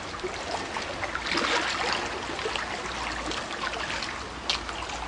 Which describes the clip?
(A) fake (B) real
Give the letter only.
B